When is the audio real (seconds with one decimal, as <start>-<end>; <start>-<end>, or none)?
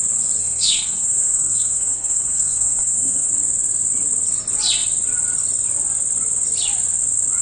0.0-0.4; 3.3-7.4